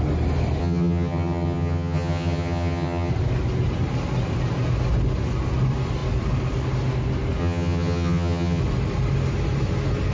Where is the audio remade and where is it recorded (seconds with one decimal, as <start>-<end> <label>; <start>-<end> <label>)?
0.0-0.6 recorded; 0.6-3.1 remade; 3.1-7.4 recorded; 7.4-8.6 remade; 8.6-10.1 recorded